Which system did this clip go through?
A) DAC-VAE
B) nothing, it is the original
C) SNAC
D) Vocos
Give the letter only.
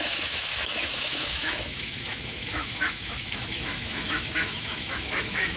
A